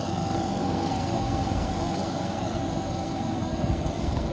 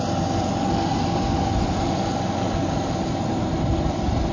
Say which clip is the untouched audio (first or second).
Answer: second